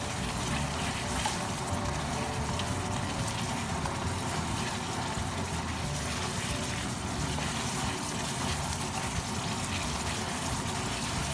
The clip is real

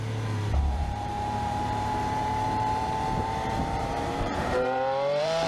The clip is fake